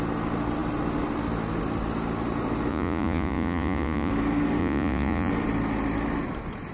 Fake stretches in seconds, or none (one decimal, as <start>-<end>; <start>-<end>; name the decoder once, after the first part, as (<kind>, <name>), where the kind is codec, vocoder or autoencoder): 2.7-4.1 (vocoder, Vocos); 4.6-5.3